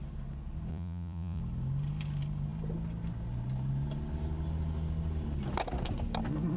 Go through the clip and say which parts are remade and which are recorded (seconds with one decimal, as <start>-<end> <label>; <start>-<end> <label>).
0.0-0.7 recorded; 0.7-1.4 remade; 1.4-6.6 recorded